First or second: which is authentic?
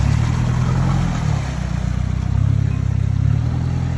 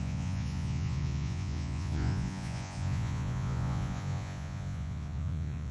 first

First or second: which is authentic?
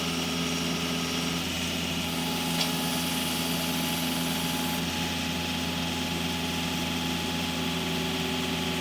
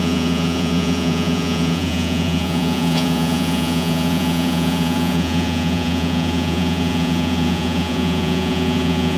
first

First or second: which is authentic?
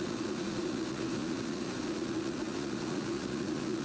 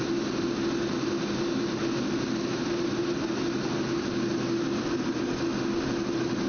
second